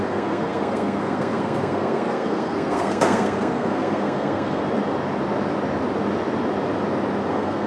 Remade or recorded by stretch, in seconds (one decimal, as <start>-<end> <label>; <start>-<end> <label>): 0.0-4.6 remade; 4.6-7.3 recorded; 7.3-7.7 remade